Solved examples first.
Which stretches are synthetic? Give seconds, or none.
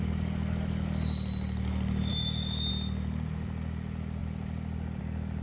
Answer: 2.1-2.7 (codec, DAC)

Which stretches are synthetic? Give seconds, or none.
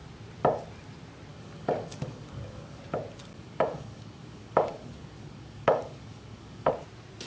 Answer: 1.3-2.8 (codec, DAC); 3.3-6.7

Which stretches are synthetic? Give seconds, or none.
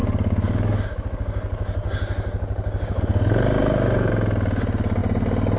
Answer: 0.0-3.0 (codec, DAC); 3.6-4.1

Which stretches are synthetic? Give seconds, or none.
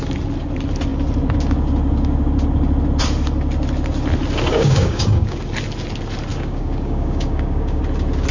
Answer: 4.5-5.4 (codec, DAC); 6.3-7.8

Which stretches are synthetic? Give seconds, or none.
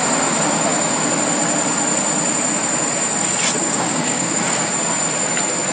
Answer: 3.6-4.7 (codec, DAC)